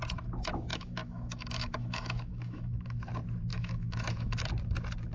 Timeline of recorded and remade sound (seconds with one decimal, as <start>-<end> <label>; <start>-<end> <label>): 0.0-0.7 recorded; 0.7-3.0 remade; 3.0-3.5 recorded; 3.5-4.4 remade; 4.4-5.1 recorded